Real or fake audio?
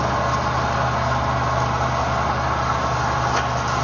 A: real